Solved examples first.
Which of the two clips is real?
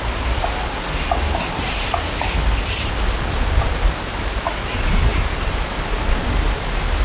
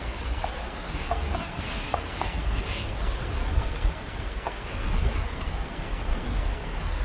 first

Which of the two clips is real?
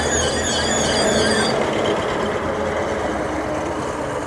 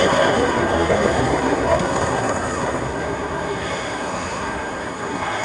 first